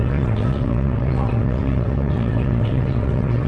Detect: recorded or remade remade